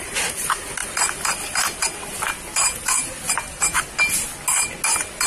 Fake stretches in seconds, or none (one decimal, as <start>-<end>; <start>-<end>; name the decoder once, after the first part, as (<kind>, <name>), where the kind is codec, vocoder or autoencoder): none